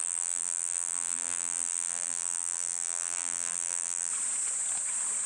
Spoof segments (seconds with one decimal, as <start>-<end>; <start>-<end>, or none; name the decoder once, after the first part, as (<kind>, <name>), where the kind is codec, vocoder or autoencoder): 0.0-4.1 (vocoder, BigVGAN v2)